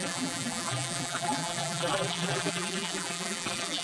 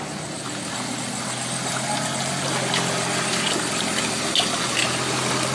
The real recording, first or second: second